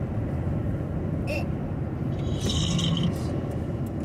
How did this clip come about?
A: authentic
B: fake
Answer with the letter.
A